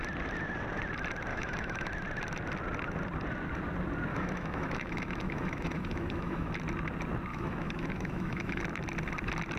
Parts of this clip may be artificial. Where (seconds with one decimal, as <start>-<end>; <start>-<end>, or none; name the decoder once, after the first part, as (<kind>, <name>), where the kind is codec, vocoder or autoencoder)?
1.3-1.9 (autoencoder, DAC-VAE); 4.1-6.5; 7.3-8.6